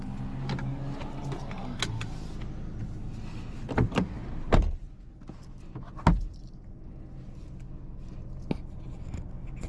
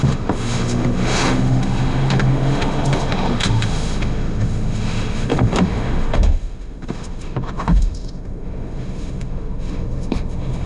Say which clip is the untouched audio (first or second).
first